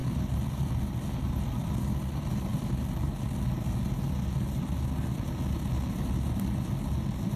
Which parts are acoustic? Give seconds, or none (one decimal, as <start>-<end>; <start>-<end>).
0.0-7.4